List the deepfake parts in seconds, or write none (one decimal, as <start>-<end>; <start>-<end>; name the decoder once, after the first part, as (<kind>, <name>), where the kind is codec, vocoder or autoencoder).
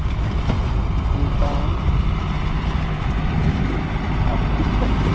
none